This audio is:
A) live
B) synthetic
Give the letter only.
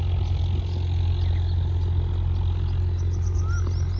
A